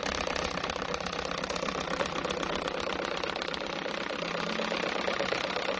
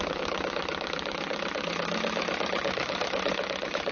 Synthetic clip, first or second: second